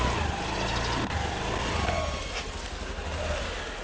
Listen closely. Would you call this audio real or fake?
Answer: real